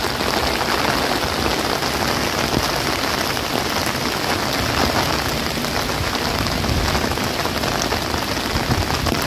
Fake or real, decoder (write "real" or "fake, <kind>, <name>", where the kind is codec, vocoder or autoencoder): real